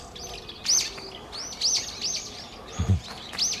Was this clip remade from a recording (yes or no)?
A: no